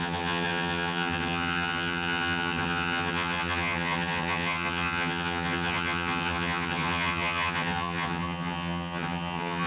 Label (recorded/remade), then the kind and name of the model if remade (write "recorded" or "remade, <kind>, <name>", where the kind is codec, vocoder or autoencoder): remade, vocoder, HiFi-GAN